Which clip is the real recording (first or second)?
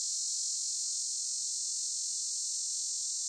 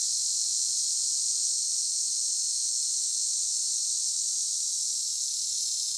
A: first